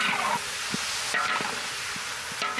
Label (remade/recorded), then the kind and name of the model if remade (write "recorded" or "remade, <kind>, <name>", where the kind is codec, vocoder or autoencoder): recorded